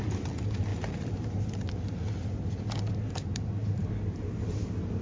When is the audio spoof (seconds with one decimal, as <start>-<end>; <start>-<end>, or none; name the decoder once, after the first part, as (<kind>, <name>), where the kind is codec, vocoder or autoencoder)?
0.7-1.4 (vocoder, BigVGAN v2); 3.6-4.4

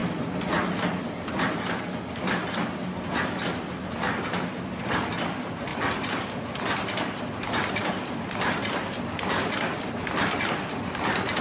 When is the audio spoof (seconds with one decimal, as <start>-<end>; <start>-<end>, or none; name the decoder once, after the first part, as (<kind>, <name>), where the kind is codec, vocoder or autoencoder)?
5.7-6.3 (vocoder, BigVGAN v2)